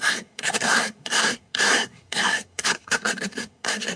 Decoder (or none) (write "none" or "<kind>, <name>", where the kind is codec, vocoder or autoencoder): codec, SNAC